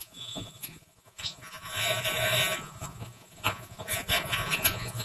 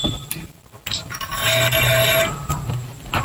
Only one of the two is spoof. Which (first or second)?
first